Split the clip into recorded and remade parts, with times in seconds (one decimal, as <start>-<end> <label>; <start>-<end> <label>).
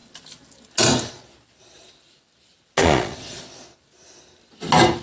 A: 0.0-2.8 recorded; 2.8-3.8 remade; 3.8-5.0 recorded